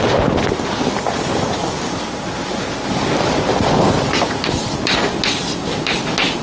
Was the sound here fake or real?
real